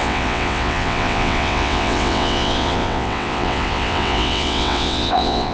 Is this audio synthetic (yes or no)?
yes